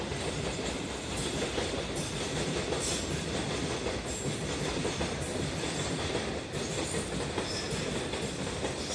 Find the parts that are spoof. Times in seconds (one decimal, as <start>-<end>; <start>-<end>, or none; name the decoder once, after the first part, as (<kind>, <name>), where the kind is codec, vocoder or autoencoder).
4.7-5.5 (vocoder, BigVGAN v2)